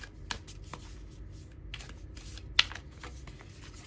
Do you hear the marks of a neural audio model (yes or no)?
no